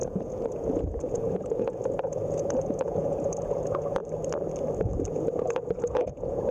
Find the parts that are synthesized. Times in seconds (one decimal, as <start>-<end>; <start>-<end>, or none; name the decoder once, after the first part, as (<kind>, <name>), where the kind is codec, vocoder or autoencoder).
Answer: 0.0-4.0 (vocoder, Vocos); 5.1-6.5